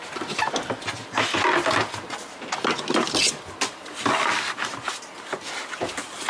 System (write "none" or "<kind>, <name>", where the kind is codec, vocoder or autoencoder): none